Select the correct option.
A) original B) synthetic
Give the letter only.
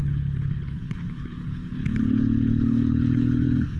B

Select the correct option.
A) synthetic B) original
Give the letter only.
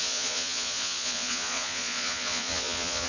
A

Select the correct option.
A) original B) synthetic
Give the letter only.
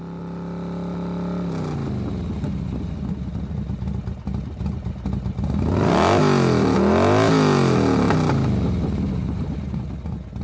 A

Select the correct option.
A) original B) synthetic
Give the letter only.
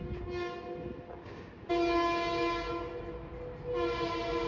A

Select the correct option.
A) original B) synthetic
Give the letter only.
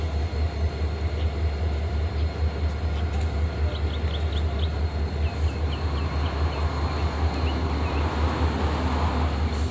A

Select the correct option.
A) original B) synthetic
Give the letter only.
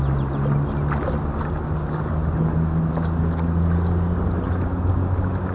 A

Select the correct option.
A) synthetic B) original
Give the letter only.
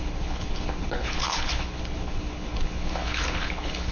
A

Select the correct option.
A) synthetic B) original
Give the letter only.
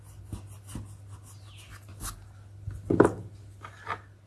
B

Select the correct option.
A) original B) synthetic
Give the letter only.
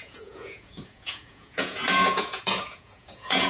B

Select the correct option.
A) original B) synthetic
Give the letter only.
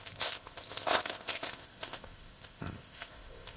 B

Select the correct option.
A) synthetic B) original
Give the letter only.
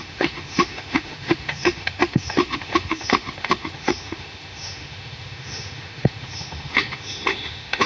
A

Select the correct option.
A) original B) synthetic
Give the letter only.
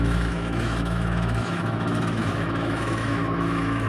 B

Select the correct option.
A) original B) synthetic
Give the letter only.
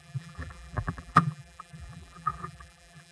B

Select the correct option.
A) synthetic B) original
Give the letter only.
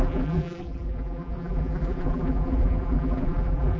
A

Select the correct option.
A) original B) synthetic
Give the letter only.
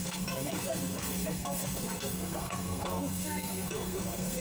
B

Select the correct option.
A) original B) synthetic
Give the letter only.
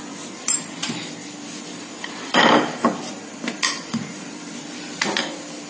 B